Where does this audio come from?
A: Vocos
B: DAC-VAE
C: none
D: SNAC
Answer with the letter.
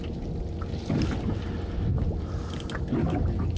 C